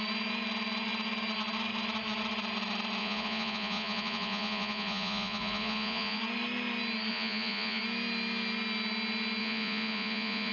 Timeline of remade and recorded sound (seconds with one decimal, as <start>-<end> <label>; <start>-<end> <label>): 0.0-3.0 recorded; 3.0-6.2 remade; 6.2-7.1 recorded; 7.1-7.8 remade; 7.8-9.4 recorded; 9.4-10.5 remade